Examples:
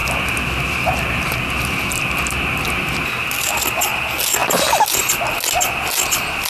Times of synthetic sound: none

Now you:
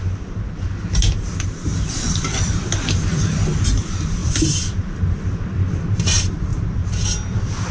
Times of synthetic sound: 1.7-3.6 (vocoder, BigVGAN v2); 4.2-5.7; 6.5-7.7

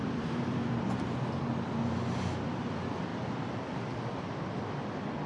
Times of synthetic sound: 0.0-1.0 (vocoder, BigVGAN v2); 3.1-4.3

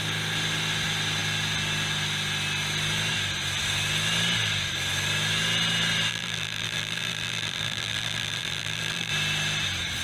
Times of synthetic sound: 6.1-9.1 (vocoder, BigVGAN v2)

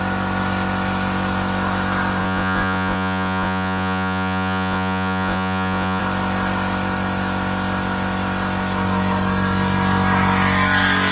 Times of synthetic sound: 2.2-6.0 (vocoder, Vocos)

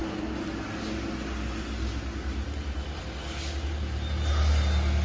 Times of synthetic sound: none

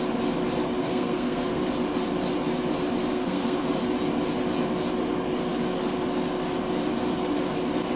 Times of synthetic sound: 0.8-1.6 (codec, SNAC); 3.1-3.7